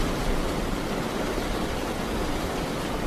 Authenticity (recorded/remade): recorded